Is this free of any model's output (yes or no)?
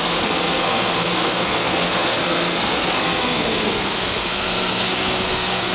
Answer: no